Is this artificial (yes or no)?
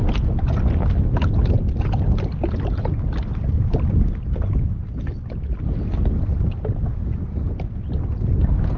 no